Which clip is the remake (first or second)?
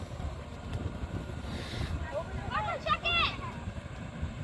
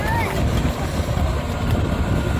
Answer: first